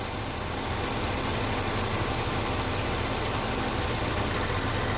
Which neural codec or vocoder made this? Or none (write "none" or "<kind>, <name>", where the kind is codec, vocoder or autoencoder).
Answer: none